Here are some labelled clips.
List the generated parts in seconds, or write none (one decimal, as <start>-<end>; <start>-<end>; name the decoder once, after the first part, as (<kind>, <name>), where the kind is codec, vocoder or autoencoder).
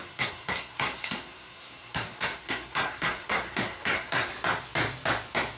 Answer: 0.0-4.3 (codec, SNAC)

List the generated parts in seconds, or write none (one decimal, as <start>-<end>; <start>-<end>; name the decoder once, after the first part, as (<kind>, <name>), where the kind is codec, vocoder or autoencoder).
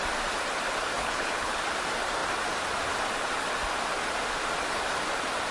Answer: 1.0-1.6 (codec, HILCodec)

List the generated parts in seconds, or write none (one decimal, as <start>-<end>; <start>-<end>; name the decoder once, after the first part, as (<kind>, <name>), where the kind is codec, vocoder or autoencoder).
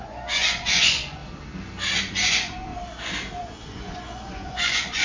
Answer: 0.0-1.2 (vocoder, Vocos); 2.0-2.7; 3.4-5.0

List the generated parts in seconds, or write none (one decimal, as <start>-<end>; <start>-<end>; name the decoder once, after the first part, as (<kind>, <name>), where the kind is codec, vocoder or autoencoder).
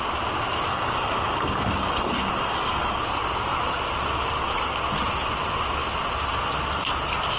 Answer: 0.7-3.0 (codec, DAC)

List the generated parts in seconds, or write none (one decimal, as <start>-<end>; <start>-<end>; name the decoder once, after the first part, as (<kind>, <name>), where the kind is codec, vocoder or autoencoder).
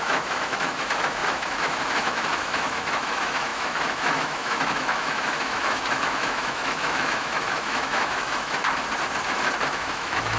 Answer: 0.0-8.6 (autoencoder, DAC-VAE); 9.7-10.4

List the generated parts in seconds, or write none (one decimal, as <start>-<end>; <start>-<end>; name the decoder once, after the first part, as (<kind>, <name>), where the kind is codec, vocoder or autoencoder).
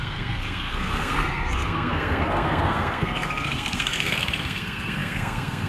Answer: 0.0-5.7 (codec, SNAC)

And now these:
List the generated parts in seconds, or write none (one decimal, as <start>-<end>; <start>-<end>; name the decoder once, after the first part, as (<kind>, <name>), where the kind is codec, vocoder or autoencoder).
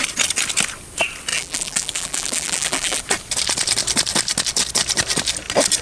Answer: 1.3-3.0 (vocoder, BigVGAN v2)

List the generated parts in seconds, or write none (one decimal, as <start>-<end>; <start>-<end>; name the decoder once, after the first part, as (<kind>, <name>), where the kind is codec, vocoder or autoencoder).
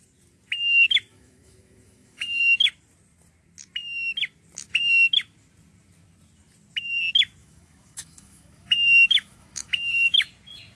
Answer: 1.1-2.4 (autoencoder, DAC-VAE); 7.4-10.3